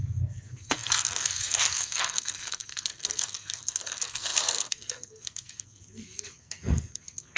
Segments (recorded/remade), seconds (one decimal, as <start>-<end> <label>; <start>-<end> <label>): 0.0-7.4 remade